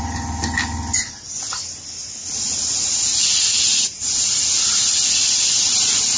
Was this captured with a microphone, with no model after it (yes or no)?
yes